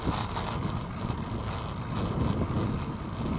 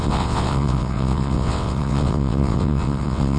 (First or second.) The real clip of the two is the first